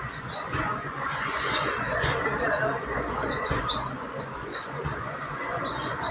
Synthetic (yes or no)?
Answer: yes